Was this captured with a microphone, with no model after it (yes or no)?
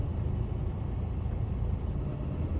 yes